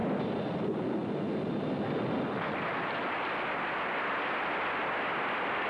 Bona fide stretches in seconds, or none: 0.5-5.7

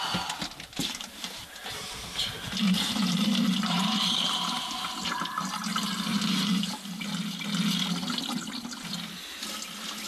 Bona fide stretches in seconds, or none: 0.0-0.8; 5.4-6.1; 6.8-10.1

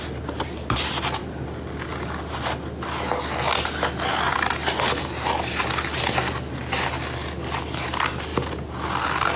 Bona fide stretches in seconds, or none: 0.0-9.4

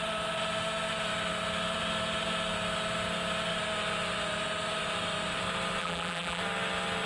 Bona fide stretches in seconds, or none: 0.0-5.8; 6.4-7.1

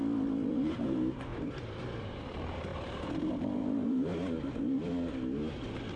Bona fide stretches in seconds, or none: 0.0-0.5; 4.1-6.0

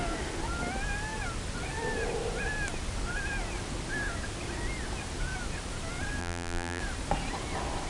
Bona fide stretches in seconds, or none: 0.0-6.2; 6.8-7.9

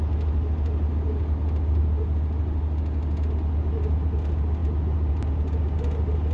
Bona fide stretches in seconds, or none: 0.0-6.3